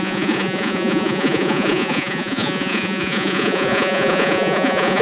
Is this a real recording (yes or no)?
no